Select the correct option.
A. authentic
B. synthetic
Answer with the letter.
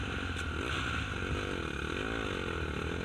A